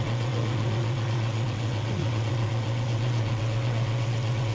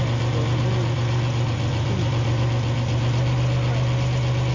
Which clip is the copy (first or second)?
first